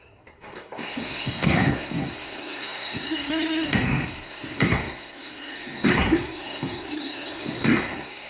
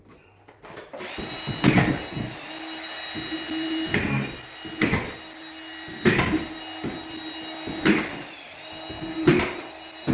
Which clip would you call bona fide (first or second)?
second